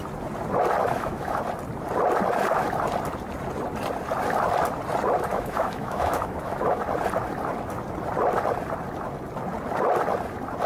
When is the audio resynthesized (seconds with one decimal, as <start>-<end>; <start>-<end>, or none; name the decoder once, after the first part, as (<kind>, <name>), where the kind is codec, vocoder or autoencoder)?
0.8-1.4 (autoencoder, DAC-VAE); 5.3-6.8